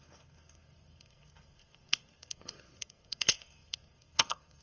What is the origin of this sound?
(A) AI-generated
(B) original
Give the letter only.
A